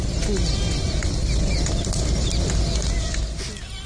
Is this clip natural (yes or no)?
yes